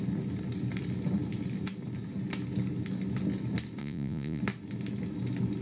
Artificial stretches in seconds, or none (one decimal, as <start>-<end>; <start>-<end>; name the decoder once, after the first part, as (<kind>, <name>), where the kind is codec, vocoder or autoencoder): 3.8-4.4 (vocoder, Vocos)